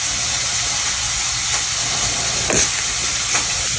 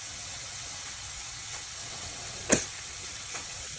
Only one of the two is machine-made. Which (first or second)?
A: second